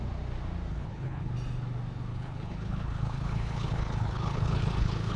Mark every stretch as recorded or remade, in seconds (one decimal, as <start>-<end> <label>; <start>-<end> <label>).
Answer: 0.0-0.7 recorded; 0.7-1.3 remade; 1.3-2.1 recorded; 2.1-5.2 remade